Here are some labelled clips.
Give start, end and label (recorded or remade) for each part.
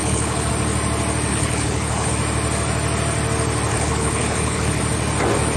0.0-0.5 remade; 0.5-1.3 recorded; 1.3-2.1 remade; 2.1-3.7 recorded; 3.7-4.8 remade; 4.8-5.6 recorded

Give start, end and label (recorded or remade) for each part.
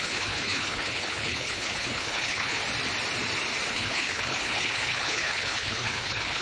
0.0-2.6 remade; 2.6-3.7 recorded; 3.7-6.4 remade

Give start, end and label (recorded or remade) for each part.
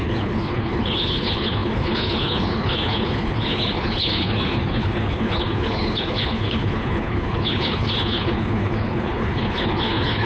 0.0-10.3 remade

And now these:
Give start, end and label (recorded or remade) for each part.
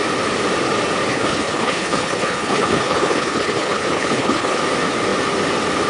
0.0-1.1 recorded; 1.1-4.6 remade; 4.6-5.9 recorded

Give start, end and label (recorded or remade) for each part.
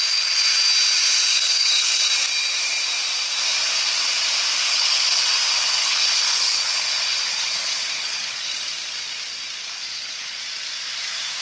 0.0-1.3 recorded; 1.3-2.1 remade; 2.1-4.6 recorded; 4.6-5.2 remade; 5.2-5.8 recorded; 5.8-8.6 remade; 8.6-9.6 recorded; 9.6-10.4 remade; 10.4-11.4 recorded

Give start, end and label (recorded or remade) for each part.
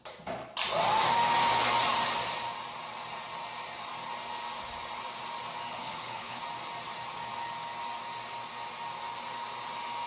0.0-5.7 recorded; 5.7-6.4 remade; 6.4-10.1 recorded